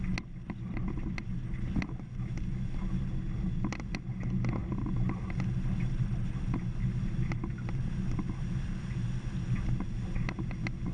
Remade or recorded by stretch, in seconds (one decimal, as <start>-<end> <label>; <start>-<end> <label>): 0.0-10.9 recorded